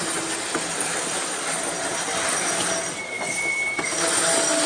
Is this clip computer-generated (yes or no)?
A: no